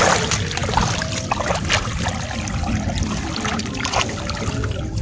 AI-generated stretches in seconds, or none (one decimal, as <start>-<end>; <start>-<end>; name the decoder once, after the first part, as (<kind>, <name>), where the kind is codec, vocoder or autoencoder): 0.6-3.6 (vocoder, BigVGAN v2)